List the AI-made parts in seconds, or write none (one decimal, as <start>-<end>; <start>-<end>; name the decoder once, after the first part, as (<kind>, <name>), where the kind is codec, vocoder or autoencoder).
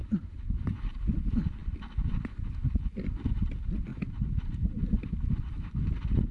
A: 0.0-0.6 (vocoder, BigVGAN v2)